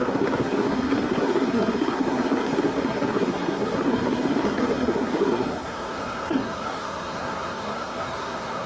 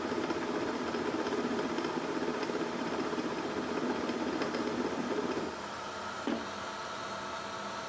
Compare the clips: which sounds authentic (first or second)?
second